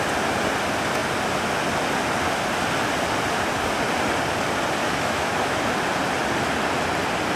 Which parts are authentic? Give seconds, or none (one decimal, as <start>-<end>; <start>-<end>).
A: 0.0-4.8; 5.6-7.3